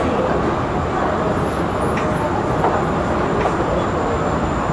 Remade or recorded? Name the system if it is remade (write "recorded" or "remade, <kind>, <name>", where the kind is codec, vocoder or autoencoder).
recorded